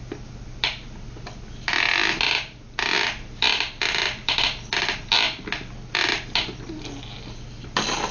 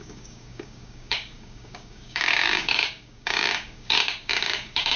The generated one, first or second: second